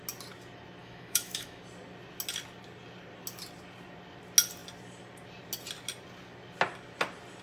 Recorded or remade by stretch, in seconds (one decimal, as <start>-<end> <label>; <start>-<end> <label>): 0.0-0.8 recorded; 0.8-1.6 remade; 1.6-7.4 recorded